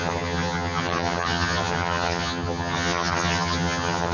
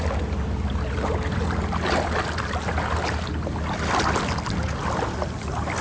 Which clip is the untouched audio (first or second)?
second